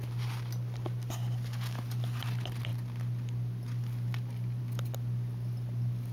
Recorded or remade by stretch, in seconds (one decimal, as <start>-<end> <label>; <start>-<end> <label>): 0.0-6.1 recorded